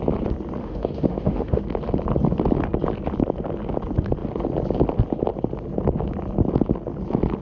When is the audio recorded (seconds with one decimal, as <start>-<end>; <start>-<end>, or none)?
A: 0.0-0.6; 1.6-7.4

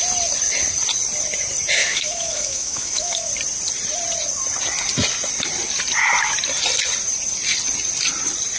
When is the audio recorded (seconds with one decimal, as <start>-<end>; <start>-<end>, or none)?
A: 0.0-1.8; 3.3-8.6

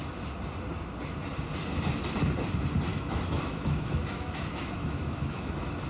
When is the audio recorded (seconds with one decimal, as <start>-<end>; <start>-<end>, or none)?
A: 0.0-2.9; 5.5-5.9

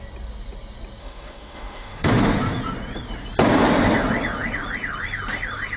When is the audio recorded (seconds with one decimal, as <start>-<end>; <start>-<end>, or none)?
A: 0.0-1.0; 2.2-5.8

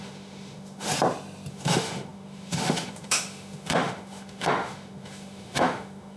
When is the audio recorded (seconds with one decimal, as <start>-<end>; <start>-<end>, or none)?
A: 0.9-1.5

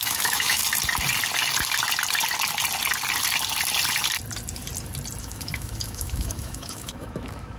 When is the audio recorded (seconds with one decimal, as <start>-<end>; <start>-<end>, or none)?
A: 0.6-5.2